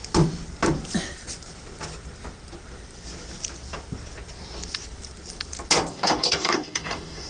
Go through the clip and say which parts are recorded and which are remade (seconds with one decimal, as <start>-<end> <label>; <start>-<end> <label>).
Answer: 0.0-5.9 recorded; 5.9-7.3 remade